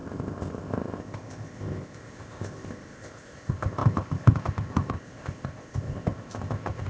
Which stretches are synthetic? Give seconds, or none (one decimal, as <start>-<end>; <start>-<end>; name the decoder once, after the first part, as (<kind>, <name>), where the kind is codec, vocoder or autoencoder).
0.0-6.9 (codec, ZipCodec)

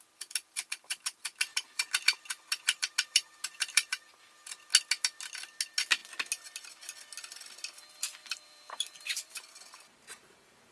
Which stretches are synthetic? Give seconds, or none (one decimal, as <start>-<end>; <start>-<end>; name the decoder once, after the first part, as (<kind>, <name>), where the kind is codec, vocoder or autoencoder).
1.5-4.0 (vocoder, BigVGAN v2); 8.2-10.7

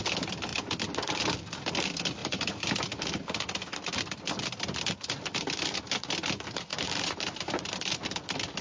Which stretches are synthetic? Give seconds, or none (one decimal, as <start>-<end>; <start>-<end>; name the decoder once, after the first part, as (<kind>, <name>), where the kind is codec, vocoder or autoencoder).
2.2-2.8 (vocoder, BigVGAN v2); 6.7-7.6